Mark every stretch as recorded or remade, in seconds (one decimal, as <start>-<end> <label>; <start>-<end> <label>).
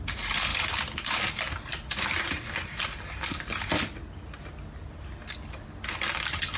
0.0-6.6 recorded